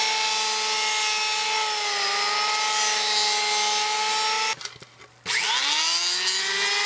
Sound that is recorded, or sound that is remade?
recorded